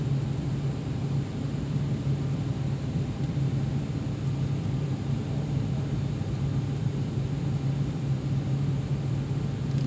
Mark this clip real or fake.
real